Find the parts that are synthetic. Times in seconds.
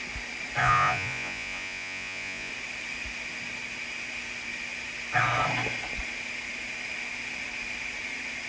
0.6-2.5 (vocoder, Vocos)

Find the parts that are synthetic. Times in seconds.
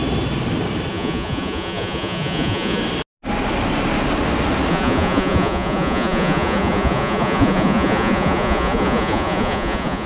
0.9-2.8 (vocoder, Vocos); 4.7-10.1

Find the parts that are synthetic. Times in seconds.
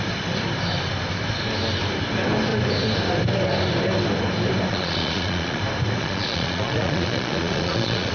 4.7-5.6 (vocoder, Vocos); 6.0-8.1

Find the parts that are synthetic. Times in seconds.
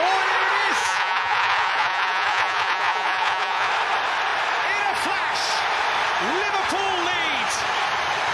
0.8-3.7 (vocoder, Vocos)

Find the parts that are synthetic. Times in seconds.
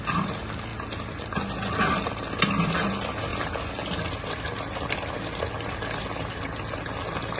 none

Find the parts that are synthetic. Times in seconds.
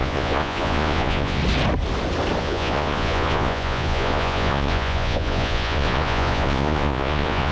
0.0-1.4 (vocoder, Vocos); 2.4-7.5